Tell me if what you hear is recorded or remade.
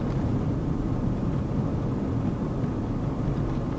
recorded